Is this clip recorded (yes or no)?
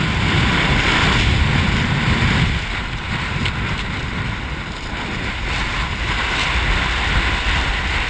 yes